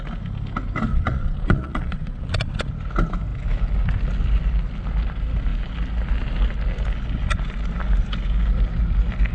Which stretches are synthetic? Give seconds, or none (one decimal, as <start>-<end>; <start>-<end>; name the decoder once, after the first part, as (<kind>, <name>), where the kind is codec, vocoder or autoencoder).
0.9-2.7 (vocoder, Vocos)